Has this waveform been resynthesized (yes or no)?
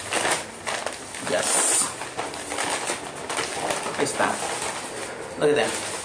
no